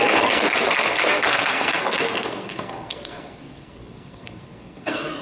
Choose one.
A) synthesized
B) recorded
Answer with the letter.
A